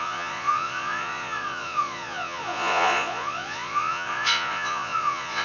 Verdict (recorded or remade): remade